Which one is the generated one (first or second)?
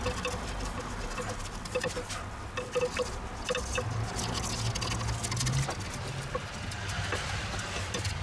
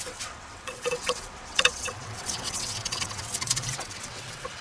second